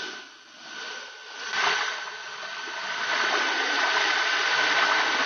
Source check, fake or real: real